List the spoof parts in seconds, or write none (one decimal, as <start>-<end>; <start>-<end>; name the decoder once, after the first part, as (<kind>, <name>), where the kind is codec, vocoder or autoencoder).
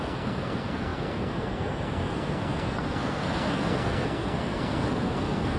0.0-5.6 (codec, SNAC)